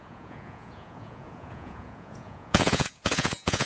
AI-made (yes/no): yes